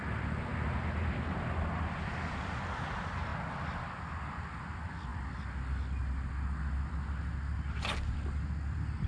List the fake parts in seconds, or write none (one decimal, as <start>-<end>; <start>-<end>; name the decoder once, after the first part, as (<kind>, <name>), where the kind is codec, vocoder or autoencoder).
none

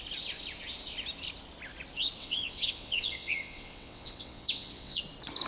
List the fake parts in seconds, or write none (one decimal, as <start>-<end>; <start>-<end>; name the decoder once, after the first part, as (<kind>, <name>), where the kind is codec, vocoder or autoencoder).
2.2-5.0 (vocoder, WaveNeXt)

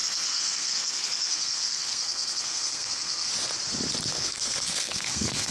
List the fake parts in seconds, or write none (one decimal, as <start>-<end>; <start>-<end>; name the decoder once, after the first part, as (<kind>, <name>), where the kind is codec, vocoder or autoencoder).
0.0-3.3 (codec, SNAC); 4.1-5.5